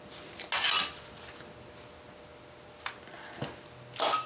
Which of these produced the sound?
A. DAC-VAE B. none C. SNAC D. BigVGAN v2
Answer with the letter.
B